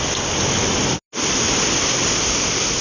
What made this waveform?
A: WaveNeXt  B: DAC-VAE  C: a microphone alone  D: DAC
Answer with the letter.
C